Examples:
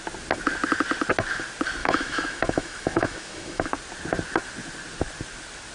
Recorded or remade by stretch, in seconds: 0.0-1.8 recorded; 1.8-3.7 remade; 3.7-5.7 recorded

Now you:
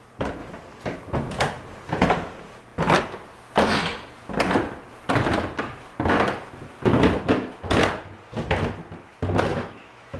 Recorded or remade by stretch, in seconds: 0.0-9.5 recorded; 9.5-10.2 remade

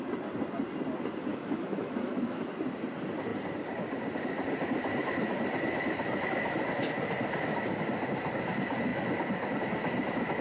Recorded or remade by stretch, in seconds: 0.0-1.3 recorded; 1.3-2.5 remade; 2.5-10.4 recorded